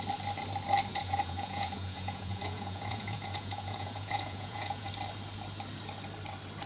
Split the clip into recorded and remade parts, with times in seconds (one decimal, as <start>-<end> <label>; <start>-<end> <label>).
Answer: 0.0-0.9 recorded; 0.9-4.9 remade; 4.9-6.7 recorded